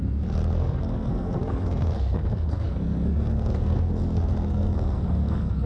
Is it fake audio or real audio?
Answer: fake